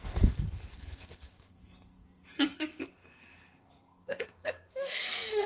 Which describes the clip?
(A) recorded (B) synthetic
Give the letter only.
B